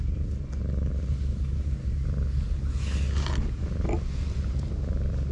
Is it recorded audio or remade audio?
recorded